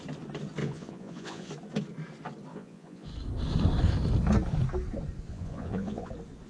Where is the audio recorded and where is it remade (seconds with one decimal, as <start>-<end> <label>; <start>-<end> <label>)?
0.0-0.6 recorded; 0.6-1.5 remade; 1.5-2.5 recorded; 2.5-3.1 remade; 3.1-5.3 recorded; 5.3-6.1 remade; 6.1-6.5 recorded